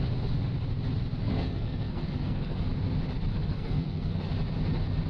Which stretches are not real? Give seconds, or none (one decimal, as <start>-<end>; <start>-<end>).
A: 1.2-2.7; 3.3-4.2